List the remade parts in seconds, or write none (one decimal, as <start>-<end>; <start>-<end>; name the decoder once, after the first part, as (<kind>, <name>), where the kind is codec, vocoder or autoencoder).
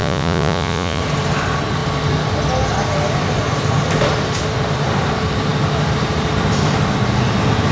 0.0-1.0 (vocoder, Vocos)